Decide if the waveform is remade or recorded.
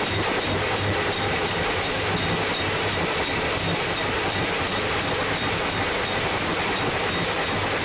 recorded